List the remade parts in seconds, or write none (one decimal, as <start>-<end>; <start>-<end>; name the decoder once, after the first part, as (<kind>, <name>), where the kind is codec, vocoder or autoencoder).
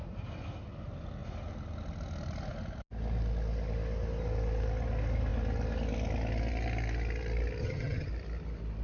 7.6-8.1 (vocoder, HiFi-GAN)